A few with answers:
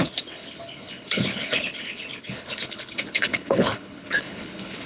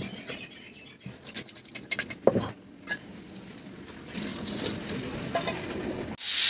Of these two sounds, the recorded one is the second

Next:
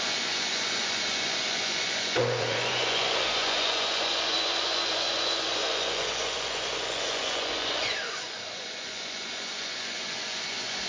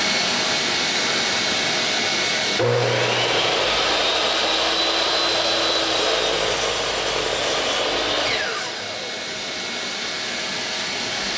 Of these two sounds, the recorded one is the second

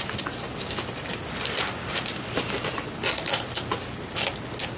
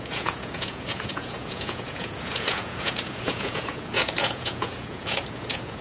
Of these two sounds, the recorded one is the first